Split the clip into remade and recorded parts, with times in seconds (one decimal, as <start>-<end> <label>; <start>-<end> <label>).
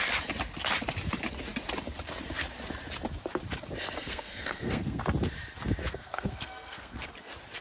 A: 0.0-4.0 recorded; 4.0-5.0 remade; 5.0-5.8 recorded; 5.8-7.1 remade; 7.1-7.6 recorded